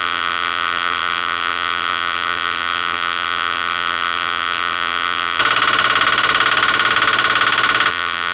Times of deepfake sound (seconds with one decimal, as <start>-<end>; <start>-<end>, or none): 0.0-5.4; 7.9-8.3